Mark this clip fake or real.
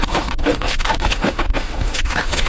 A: fake